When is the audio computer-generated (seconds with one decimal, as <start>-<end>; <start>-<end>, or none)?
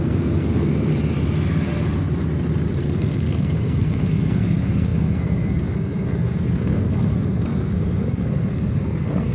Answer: 0.0-0.9; 2.8-9.3